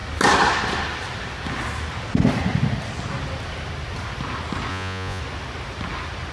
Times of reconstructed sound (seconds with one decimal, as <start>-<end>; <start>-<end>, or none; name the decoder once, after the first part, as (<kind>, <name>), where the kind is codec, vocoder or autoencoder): 4.7-5.2 (vocoder, Vocos)